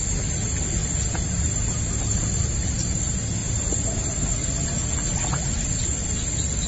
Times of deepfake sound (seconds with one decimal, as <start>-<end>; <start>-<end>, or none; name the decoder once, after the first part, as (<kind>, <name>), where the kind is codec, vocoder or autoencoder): none